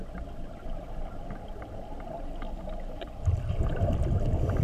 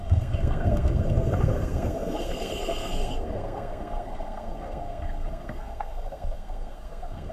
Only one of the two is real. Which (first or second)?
first